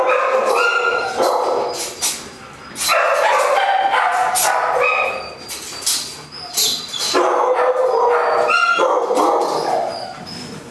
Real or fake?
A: real